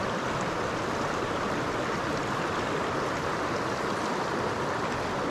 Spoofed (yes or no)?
no